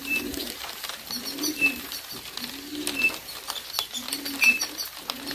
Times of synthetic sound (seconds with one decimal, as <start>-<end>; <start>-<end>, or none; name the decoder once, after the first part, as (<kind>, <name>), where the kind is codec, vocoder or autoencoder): 0.0-0.7 (vocoder, BigVGAN v2)